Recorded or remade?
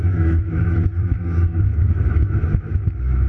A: remade